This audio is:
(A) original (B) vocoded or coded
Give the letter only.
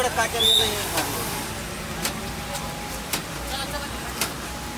A